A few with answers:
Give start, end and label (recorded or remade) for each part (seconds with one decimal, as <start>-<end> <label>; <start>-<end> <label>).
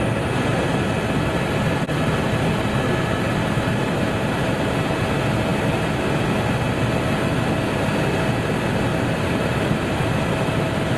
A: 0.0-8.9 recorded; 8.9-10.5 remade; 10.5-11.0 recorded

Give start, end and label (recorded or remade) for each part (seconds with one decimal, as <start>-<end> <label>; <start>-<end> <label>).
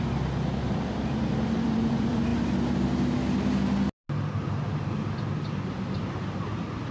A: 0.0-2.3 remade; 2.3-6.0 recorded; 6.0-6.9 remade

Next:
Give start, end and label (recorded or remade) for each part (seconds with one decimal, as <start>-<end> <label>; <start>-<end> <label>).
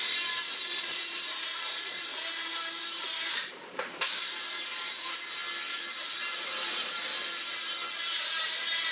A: 0.0-5.4 remade; 5.4-5.9 recorded; 5.9-7.1 remade; 7.1-8.1 recorded; 8.1-8.9 remade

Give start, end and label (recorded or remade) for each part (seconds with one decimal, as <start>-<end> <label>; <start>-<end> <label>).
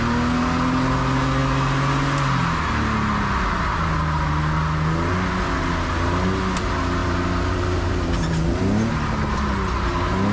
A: 0.0-7.0 recorded; 7.0-8.9 remade; 8.9-10.3 recorded